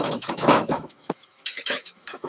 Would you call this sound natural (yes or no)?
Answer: no